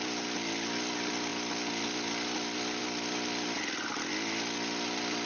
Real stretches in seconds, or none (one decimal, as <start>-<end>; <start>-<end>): 0.0-5.3